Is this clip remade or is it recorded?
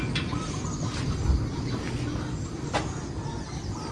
recorded